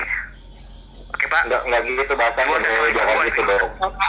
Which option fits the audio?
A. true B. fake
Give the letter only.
A